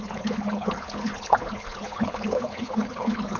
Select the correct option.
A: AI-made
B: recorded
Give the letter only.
A